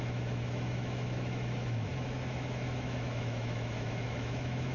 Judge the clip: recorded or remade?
remade